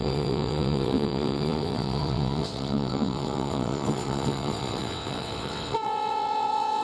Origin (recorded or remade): remade